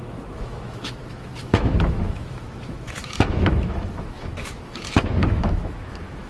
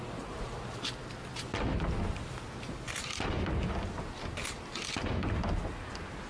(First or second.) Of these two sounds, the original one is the second